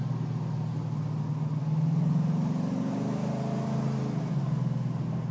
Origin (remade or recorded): recorded